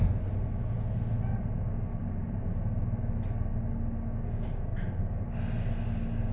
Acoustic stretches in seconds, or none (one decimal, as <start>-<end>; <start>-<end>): 0.0-2.0; 2.6-4.7; 5.3-6.3